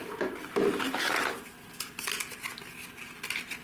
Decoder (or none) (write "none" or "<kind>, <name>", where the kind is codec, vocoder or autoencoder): none